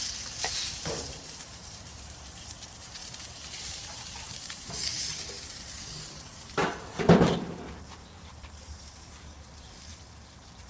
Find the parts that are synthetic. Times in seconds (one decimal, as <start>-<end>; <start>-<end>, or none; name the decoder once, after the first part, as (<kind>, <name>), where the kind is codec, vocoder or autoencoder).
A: 0.0-6.6 (vocoder, BigVGAN v2); 7.3-10.7